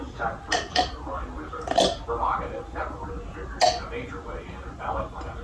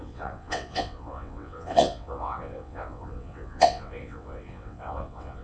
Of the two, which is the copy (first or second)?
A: second